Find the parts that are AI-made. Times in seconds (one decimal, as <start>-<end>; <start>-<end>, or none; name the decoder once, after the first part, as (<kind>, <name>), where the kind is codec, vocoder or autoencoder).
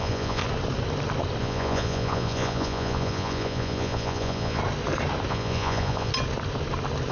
0.0-0.4 (vocoder, Vocos); 1.4-4.6; 5.3-6.1